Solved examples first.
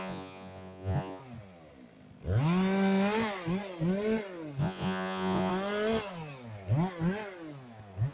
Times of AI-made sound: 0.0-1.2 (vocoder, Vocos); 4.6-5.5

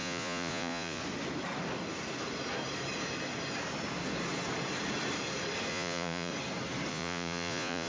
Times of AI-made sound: 0.0-1.0 (vocoder, Vocos); 5.7-6.3; 6.9-7.9

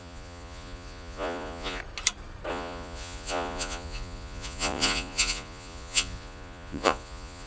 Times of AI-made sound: 0.0-1.8 (vocoder, Vocos); 2.5-7.5

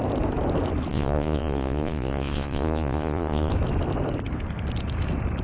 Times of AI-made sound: 0.9-3.5 (vocoder, Vocos)

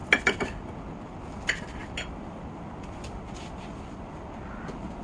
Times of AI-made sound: none

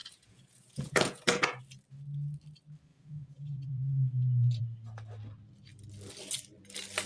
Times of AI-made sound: 0.0-1.6 (vocoder, Vocos); 2.9-4.6

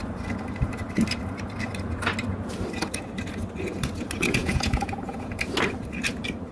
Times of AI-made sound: 4.4-5.4 (vocoder, Vocos)

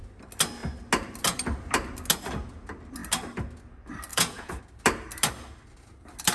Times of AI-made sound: 4.1-4.6 (vocoder, Vocos)